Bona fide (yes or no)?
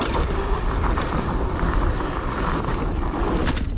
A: no